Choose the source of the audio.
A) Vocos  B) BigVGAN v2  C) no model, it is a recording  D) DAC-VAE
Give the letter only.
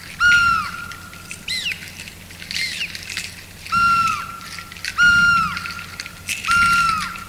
C